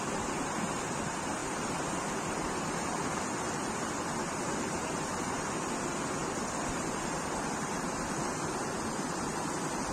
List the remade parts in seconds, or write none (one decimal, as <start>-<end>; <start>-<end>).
1.4-3.2; 6.2-7.7